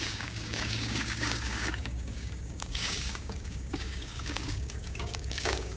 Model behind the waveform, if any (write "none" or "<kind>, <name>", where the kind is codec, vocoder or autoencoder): codec, DAC